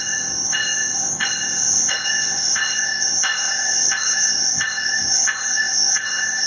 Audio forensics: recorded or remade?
remade